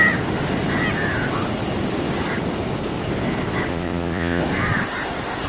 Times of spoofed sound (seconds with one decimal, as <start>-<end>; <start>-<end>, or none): 3.7-4.4